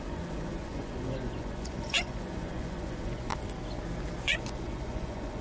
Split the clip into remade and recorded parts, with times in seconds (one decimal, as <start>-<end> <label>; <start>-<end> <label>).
0.0-3.3 remade; 3.3-4.2 recorded; 4.2-5.4 remade

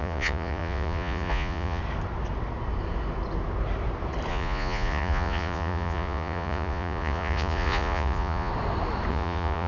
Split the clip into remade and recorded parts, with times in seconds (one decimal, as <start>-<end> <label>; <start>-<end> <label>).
0.0-1.8 remade; 1.8-4.3 recorded; 4.3-8.5 remade; 8.5-9.1 recorded; 9.1-9.7 remade

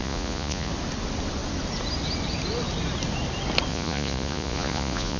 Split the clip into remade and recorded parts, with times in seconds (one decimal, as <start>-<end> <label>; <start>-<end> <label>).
0.0-0.7 remade; 0.7-3.7 recorded; 3.7-5.2 remade

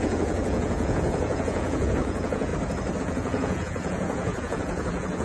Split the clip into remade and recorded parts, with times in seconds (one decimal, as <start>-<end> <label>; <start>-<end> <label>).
0.0-2.5 remade; 2.5-3.0 recorded; 3.0-5.2 remade

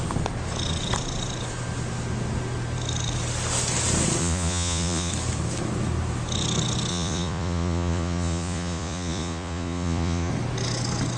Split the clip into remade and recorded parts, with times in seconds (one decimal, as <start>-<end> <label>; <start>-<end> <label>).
0.0-4.2 recorded; 4.2-5.1 remade; 5.1-6.9 recorded; 6.9-10.3 remade; 10.3-11.2 recorded

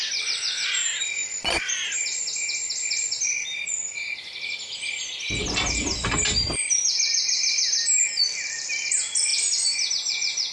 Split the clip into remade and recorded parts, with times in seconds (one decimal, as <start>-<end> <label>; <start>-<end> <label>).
0.0-10.5 recorded

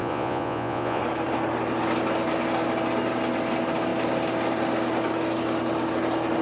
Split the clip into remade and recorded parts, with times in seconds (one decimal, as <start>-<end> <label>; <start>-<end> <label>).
0.0-1.0 remade; 1.0-6.4 recorded

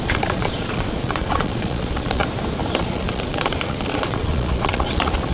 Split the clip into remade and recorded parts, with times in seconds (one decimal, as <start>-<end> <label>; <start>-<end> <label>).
0.0-2.2 remade; 2.2-2.8 recorded; 2.8-5.3 remade